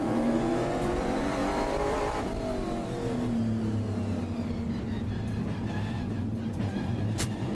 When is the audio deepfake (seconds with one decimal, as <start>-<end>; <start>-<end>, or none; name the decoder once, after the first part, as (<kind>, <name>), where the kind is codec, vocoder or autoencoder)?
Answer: 0.0-1.4 (vocoder, Vocos); 5.9-7.5